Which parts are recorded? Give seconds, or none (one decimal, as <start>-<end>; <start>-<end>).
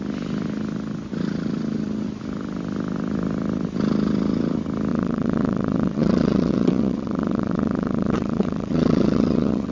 0.0-4.9